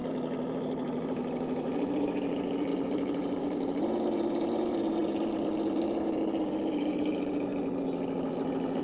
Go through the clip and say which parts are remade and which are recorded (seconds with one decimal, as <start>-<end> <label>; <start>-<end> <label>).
0.0-0.6 recorded; 0.6-7.5 remade; 7.5-8.3 recorded; 8.3-8.8 remade